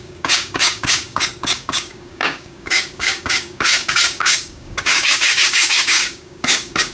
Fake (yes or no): yes